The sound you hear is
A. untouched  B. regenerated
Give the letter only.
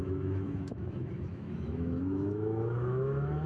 B